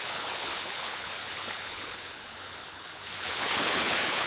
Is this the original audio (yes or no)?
no